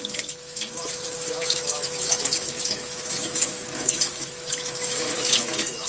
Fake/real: fake